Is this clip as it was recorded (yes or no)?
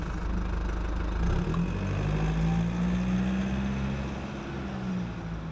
yes